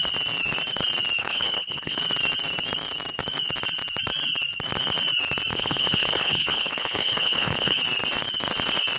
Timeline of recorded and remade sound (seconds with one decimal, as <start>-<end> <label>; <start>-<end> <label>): 0.0-1.2 recorded; 1.2-2.0 remade; 2.0-5.5 recorded; 5.5-7.8 remade; 7.8-9.0 recorded